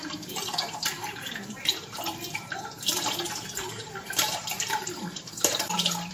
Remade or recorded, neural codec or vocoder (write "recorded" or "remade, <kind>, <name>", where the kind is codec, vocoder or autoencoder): remade, vocoder, BigVGAN v2